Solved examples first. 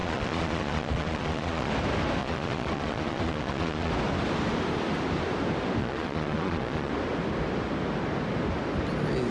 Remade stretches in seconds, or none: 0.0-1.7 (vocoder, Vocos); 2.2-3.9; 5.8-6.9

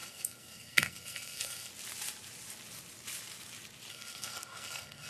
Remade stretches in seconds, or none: 0.0-1.7 (codec, SNAC); 3.9-5.1

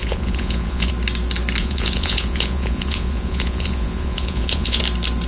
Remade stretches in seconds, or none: 0.0-0.9 (vocoder, Vocos); 1.6-4.8

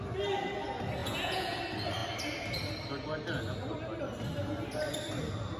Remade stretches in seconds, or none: 1.0-1.6 (vocoder, Vocos)

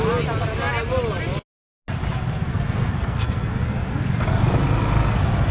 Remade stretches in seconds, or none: 2.5-3.5 (codec, SNAC)

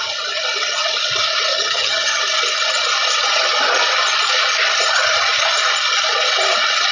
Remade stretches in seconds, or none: 1.5-2.2 (vocoder, HiFi-GAN)

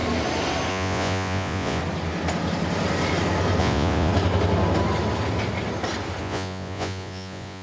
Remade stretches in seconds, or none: 0.7-1.8 (vocoder, Vocos); 3.6-4.1; 6.2-7.6

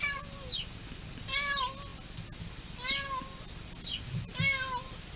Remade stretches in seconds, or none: none